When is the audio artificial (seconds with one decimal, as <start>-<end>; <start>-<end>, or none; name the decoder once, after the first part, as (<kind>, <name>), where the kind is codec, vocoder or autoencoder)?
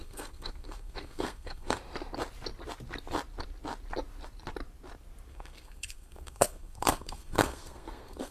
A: 0.0-1.8 (codec, SNAC); 5.3-8.3